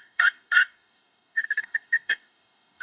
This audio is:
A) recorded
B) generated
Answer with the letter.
B